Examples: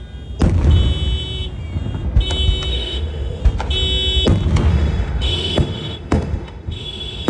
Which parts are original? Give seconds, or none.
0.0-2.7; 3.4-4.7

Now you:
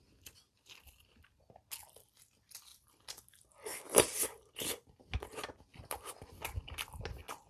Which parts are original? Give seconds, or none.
0.0-7.5

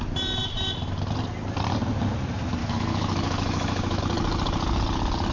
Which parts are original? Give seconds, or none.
0.0-2.6; 4.0-5.3

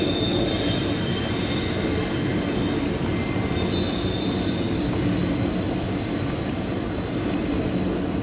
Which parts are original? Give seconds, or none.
0.0-8.2

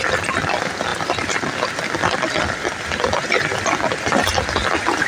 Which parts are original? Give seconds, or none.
0.0-5.1

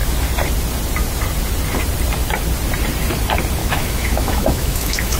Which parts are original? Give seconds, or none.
0.0-3.6

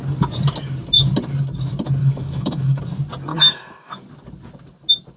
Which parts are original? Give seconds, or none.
0.0-2.0; 2.8-3.3; 3.9-5.2